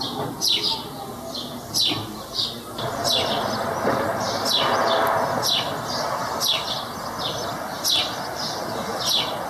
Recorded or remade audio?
recorded